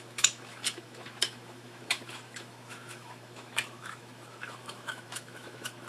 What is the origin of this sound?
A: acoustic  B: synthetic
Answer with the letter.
B